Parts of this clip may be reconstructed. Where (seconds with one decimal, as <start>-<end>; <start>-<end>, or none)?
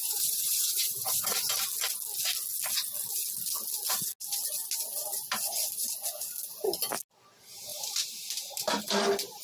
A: 0.0-1.6; 7.7-8.8